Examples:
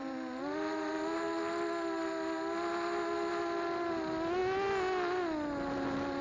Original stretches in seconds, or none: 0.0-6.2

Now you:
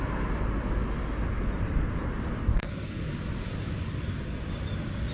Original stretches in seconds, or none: 0.0-2.4; 3.0-5.1

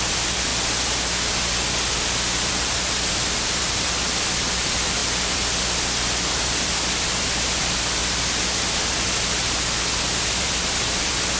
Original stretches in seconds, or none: 0.5-2.5